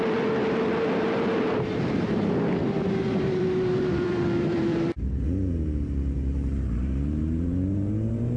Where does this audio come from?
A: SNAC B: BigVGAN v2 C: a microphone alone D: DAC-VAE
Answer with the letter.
B